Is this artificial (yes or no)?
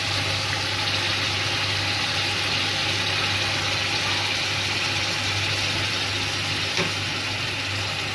no